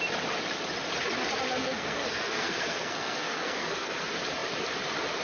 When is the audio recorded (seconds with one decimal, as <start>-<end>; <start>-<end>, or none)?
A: 0.0-1.6; 4.0-5.2